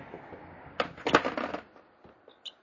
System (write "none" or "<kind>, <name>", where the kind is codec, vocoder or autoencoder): none